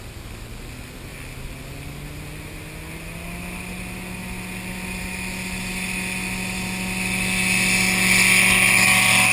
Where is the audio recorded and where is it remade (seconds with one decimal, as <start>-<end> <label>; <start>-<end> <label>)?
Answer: 0.0-9.3 recorded